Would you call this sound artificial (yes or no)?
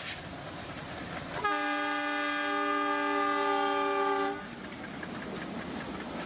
no